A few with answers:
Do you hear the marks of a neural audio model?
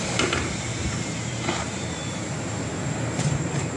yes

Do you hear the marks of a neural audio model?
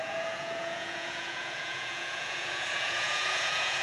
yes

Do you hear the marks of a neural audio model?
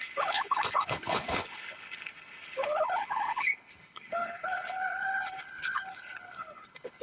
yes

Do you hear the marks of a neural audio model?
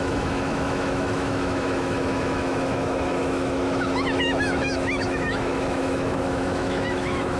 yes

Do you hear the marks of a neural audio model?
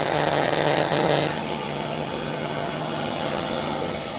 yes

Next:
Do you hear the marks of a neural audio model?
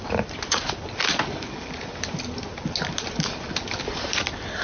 no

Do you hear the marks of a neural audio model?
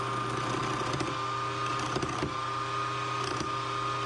no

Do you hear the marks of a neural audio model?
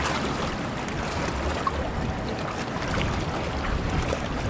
no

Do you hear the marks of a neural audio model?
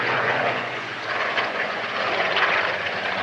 yes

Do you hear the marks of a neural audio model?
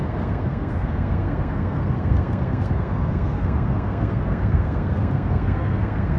yes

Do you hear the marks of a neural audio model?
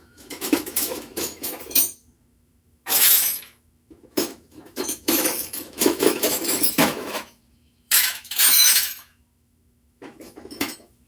yes